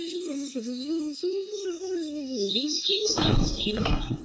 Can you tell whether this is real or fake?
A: fake